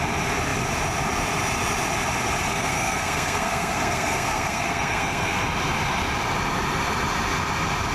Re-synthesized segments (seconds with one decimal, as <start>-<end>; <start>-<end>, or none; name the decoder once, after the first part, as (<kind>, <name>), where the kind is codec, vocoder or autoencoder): 2.5-5.4 (codec, SNAC)

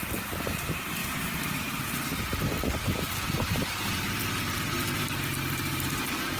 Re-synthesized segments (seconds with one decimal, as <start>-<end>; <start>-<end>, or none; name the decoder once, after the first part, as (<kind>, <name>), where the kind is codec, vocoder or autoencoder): 0.0-6.4 (vocoder, BigVGAN v2)

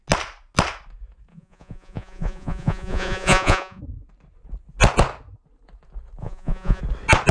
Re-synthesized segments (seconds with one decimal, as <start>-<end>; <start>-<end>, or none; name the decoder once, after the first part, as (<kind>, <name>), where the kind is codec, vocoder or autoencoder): 1.3-3.8 (vocoder, Vocos); 6.2-6.8